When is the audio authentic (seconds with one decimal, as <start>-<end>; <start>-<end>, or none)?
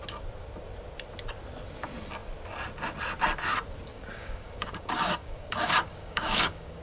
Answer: 0.0-3.9